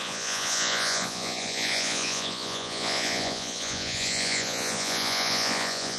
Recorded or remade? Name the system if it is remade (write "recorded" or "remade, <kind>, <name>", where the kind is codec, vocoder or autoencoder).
remade, vocoder, Vocos